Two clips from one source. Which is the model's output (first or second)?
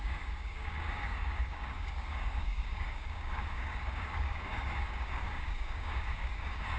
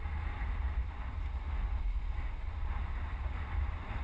first